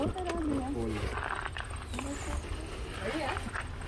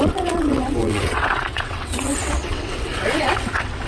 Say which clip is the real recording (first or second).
first